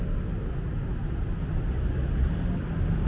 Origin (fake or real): real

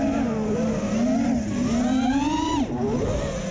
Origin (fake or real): real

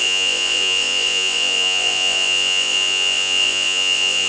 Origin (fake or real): fake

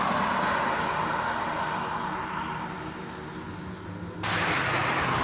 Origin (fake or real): real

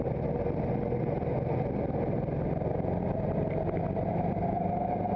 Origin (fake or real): real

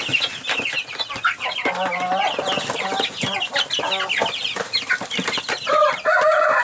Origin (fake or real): real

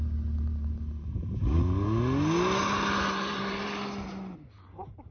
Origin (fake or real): real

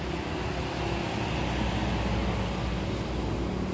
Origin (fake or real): real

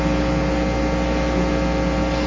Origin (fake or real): real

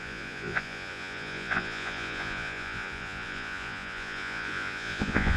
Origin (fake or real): fake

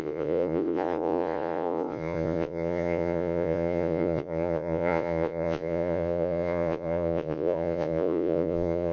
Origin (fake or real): fake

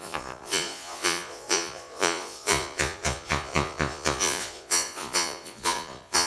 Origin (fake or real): fake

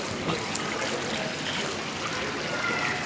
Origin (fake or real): real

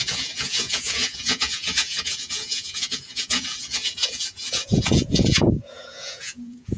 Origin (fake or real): fake